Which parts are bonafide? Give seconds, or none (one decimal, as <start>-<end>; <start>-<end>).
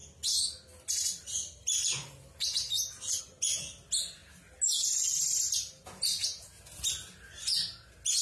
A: 0.0-8.2